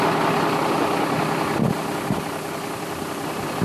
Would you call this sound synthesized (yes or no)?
no